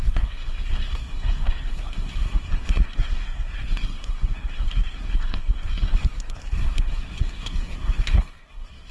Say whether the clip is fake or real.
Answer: fake